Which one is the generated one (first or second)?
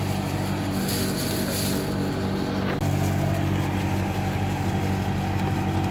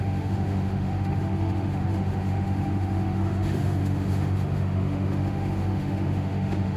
second